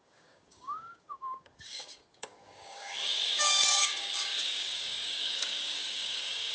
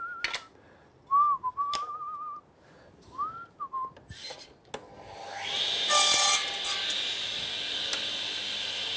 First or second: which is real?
second